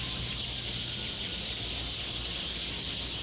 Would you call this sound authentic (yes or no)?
yes